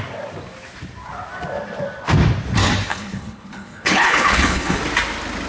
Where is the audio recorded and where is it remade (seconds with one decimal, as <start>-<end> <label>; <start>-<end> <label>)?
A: 0.0-2.9 recorded; 2.9-4.8 remade; 4.8-5.5 recorded